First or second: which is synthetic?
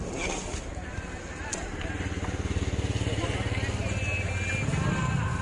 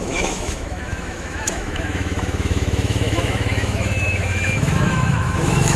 second